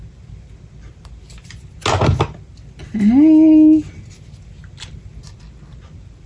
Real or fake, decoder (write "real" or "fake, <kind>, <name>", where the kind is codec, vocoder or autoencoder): real